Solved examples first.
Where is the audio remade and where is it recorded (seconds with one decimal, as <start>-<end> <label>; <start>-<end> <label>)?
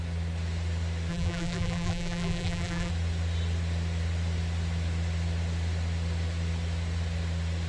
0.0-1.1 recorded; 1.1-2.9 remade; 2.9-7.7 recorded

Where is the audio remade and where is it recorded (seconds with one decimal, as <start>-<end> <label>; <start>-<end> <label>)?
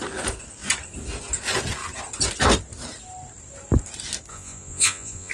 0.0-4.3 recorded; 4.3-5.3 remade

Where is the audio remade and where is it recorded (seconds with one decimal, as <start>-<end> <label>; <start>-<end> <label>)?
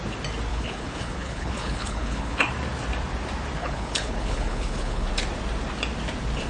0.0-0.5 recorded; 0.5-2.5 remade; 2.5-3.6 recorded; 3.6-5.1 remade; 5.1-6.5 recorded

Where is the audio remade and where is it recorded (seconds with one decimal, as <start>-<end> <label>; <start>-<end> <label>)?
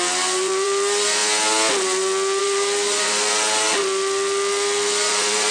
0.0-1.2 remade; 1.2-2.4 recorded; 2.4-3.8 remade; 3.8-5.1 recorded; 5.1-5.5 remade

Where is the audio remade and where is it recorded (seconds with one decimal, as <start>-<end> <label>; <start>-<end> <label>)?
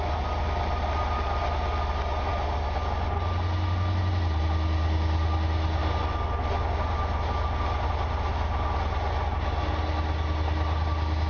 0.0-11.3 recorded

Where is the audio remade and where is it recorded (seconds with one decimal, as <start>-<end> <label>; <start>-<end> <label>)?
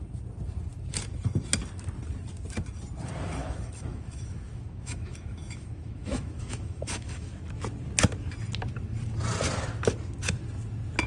0.0-3.4 recorded; 3.4-7.3 remade; 7.3-11.1 recorded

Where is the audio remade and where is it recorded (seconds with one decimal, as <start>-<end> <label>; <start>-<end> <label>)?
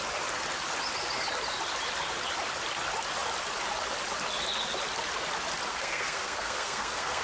0.0-5.7 recorded; 5.7-7.2 remade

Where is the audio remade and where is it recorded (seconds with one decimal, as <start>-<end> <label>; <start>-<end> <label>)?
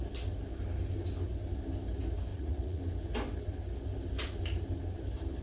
0.0-2.3 recorded; 2.3-2.8 remade; 2.8-5.4 recorded